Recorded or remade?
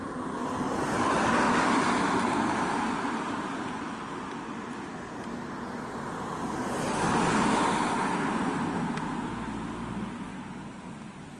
recorded